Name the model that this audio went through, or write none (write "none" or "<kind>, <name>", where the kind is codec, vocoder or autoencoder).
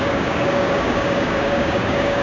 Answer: codec, DAC